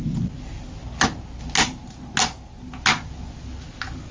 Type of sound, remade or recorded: recorded